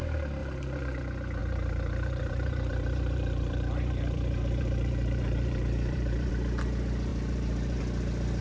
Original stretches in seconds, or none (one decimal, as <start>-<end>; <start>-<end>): 0.0-0.4; 1.0-1.4; 6.3-7.1; 7.8-8.4